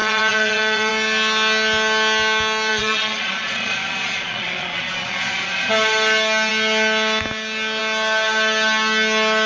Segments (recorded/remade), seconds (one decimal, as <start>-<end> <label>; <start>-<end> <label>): 0.0-0.9 remade; 0.9-2.7 recorded; 2.7-5.7 remade; 5.7-9.5 recorded

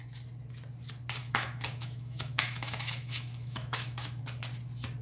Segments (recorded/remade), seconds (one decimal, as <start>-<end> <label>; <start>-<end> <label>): 0.0-1.2 recorded; 1.2-4.2 remade; 4.2-5.0 recorded

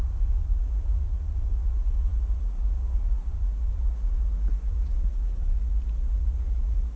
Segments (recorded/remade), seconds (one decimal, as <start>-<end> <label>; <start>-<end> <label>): 0.0-7.0 remade

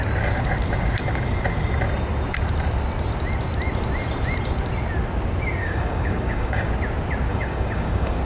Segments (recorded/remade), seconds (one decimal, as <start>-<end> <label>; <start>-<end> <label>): 0.0-5.6 recorded; 5.6-6.7 remade; 6.7-7.3 recorded; 7.3-8.2 remade

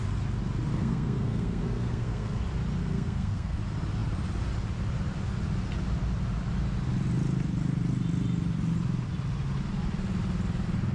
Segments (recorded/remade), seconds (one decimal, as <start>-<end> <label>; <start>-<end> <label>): 0.0-0.7 recorded; 0.7-2.4 remade; 2.4-2.8 recorded; 2.8-3.6 remade; 3.6-10.9 recorded

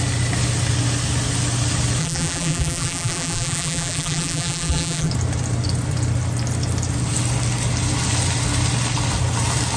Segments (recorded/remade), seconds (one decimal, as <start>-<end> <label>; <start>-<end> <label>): 0.0-2.0 recorded; 2.0-5.1 remade; 5.1-9.8 recorded